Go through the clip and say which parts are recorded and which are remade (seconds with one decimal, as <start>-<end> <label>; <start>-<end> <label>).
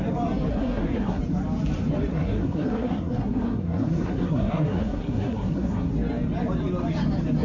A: 0.0-0.5 recorded; 0.5-1.2 remade; 1.2-2.1 recorded; 2.1-5.9 remade; 5.9-7.4 recorded